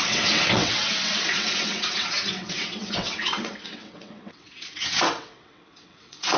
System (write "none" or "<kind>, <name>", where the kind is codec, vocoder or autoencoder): vocoder, WaveNeXt